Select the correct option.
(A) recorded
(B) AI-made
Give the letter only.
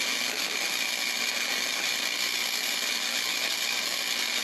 A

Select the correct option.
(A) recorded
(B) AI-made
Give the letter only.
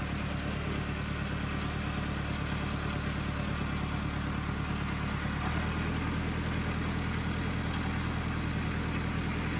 A